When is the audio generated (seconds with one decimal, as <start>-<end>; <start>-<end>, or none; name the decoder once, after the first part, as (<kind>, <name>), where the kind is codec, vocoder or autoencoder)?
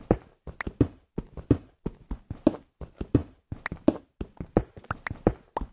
none